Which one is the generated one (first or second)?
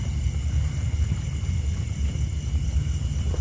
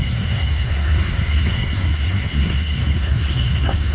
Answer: second